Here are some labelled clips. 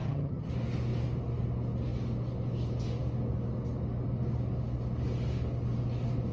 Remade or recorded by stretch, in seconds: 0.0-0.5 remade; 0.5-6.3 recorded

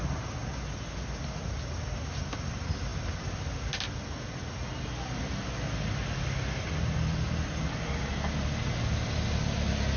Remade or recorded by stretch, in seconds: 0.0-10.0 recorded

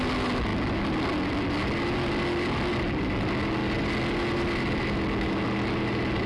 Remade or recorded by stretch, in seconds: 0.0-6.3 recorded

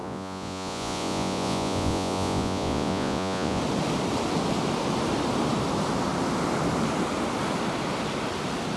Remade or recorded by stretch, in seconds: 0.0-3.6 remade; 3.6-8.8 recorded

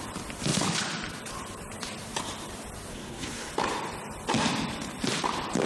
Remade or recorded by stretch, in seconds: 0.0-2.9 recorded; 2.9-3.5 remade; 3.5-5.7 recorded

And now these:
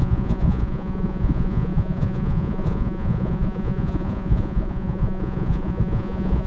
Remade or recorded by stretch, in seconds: 0.0-6.5 remade

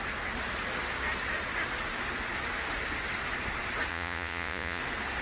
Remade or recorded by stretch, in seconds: 0.0-3.9 recorded; 3.9-4.8 remade; 4.8-5.2 recorded